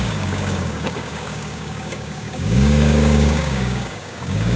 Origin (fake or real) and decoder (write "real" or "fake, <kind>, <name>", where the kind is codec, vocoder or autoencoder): fake, codec, DAC